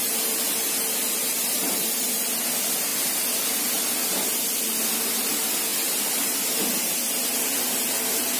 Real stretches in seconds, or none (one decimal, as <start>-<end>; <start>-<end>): 0.0-8.4